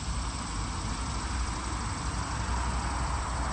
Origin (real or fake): real